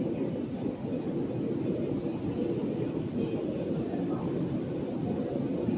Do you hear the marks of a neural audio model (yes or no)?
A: no